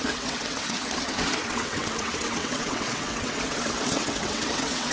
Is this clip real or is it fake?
fake